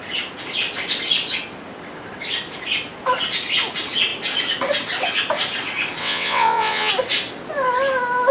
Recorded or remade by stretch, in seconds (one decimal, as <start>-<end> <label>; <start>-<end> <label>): 0.0-6.0 recorded; 6.0-6.9 remade; 6.9-8.3 recorded